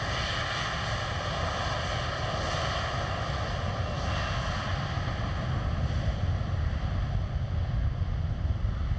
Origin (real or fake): real